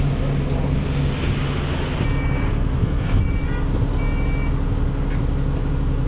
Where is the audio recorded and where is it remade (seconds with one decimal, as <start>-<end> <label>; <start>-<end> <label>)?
0.0-2.5 recorded; 2.5-3.2 remade; 3.2-6.1 recorded